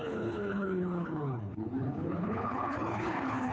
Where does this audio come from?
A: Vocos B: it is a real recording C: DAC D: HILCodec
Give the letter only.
D